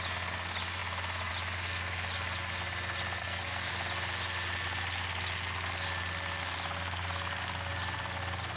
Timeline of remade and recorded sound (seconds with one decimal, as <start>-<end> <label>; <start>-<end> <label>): 0.0-3.2 recorded; 3.2-3.7 remade; 3.7-8.6 recorded